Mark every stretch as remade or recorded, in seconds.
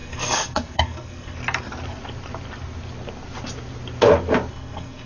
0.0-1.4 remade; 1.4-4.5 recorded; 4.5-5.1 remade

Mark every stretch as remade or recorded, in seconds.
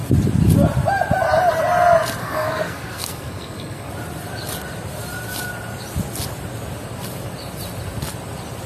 0.0-2.2 recorded; 2.2-3.9 remade; 3.9-8.7 recorded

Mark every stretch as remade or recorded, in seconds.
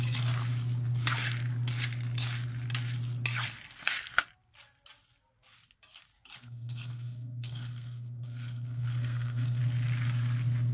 0.0-6.4 recorded; 6.4-9.6 remade; 9.6-10.7 recorded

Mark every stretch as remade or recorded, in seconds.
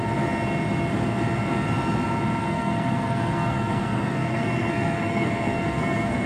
0.0-2.4 recorded; 2.4-6.3 remade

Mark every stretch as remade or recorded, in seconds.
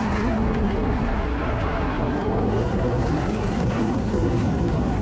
0.0-5.0 remade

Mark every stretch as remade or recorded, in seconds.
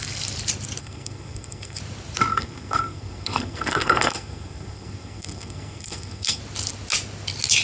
0.0-0.8 recorded; 0.8-1.8 remade; 1.8-2.3 recorded; 2.3-6.4 remade; 6.4-7.6 recorded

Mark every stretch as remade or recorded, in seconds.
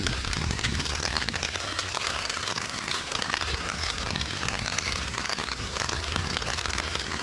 0.0-7.2 remade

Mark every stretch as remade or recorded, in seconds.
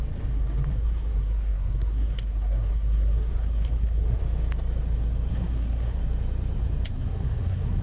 0.0-0.7 recorded; 0.7-4.2 remade; 4.2-5.3 recorded; 5.3-6.0 remade; 6.0-6.9 recorded; 6.9-7.8 remade